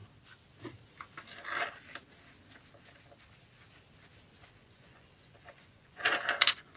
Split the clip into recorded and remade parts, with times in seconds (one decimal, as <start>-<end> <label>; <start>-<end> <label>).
0.0-4.6 recorded; 4.6-6.8 remade